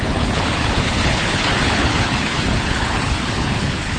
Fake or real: fake